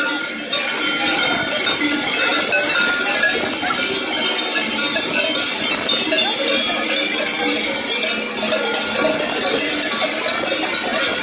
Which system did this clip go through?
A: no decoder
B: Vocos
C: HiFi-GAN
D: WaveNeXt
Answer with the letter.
A